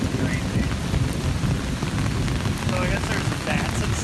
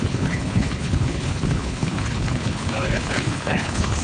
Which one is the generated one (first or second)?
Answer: second